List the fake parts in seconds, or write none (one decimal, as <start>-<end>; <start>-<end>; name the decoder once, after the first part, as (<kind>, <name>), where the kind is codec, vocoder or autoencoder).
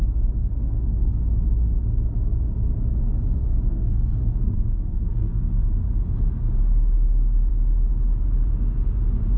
0.4-1.2 (codec, SNAC); 3.4-5.7